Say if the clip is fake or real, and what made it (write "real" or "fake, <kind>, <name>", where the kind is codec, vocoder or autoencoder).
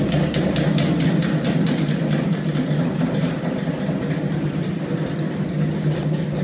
real